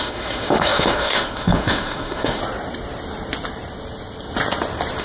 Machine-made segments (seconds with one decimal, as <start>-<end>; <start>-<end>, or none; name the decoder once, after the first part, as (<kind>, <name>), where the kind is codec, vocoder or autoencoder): 0.0-2.4 (autoencoder, DAC-VAE)

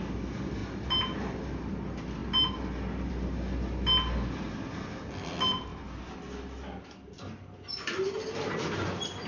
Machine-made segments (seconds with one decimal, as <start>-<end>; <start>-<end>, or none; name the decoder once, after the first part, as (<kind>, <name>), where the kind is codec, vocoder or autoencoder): none

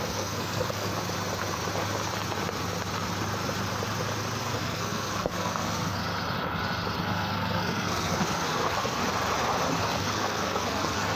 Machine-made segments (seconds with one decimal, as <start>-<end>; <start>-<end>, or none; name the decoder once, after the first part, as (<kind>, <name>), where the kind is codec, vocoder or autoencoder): 0.0-0.9 (codec, SNAC); 4.4-6.0; 7.0-9.0; 9.8-11.2

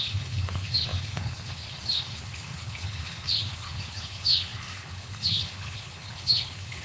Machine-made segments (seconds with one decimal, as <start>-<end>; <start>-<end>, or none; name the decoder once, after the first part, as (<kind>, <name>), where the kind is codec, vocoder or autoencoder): 0.0-6.8 (codec, HILCodec)

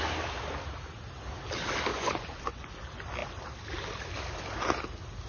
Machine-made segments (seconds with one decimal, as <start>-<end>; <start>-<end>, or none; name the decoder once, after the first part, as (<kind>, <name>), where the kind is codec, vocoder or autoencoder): 1.9-2.7 (vocoder, Vocos)

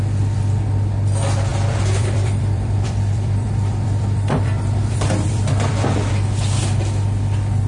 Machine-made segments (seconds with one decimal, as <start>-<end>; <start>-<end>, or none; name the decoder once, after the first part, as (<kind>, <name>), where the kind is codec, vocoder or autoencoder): 1.5-6.1 (vocoder, BigVGAN v2)

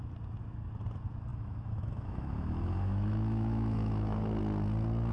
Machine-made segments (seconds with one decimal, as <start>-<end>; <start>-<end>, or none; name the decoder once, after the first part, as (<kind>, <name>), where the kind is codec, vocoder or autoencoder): 1.3-4.4 (autoencoder, DAC-VAE)